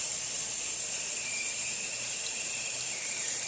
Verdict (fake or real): fake